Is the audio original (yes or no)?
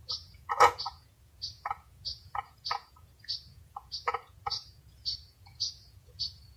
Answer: no